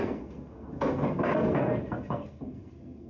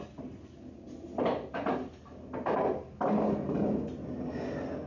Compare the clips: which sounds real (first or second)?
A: second